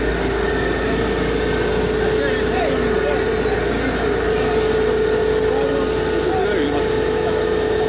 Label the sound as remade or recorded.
recorded